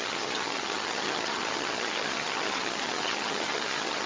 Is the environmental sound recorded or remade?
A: remade